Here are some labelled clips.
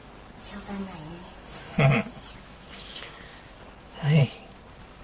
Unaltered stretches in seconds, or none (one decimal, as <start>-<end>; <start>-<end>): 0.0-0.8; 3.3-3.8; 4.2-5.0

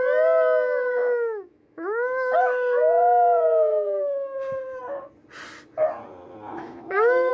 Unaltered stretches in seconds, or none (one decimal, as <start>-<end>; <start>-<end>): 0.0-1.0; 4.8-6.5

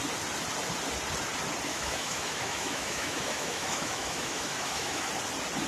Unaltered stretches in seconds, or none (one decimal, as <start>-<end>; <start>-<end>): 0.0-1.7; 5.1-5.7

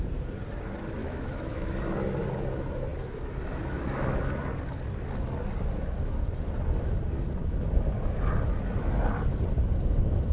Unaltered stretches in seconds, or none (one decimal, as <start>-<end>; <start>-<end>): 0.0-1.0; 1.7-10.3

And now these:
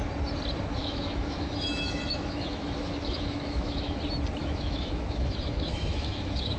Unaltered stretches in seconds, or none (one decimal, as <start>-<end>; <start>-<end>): 0.0-0.8; 4.0-4.4

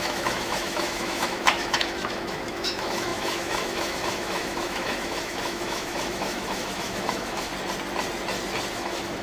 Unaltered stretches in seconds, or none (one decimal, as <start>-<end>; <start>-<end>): 7.5-8.7